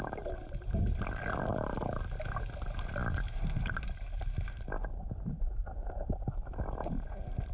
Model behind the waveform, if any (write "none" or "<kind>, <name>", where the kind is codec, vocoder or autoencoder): none